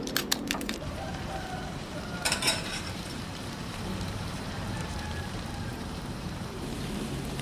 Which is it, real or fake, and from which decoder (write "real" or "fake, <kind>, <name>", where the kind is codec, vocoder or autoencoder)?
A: fake, vocoder, BigVGAN v2